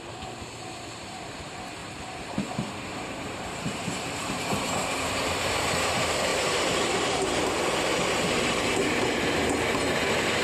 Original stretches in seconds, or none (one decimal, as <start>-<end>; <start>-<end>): 1.8-2.9; 6.3-10.4